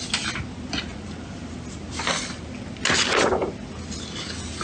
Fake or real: real